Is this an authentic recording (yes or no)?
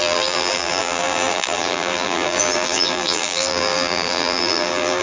no